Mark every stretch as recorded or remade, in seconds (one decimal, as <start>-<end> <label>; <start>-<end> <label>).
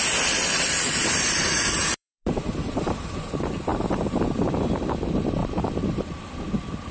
0.0-1.8 recorded; 1.8-3.3 remade; 3.3-3.7 recorded; 3.7-4.2 remade; 4.2-5.4 recorded; 5.4-6.0 remade; 6.0-6.9 recorded